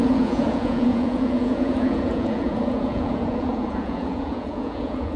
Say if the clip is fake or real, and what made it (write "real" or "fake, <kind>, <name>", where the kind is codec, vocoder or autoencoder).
fake, vocoder, Vocos